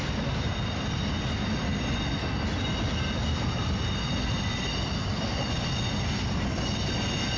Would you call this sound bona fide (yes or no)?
yes